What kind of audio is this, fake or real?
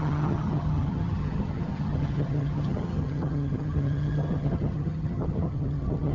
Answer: fake